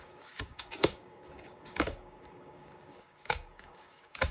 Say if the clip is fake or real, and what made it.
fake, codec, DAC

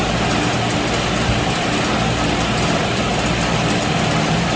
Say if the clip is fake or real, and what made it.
real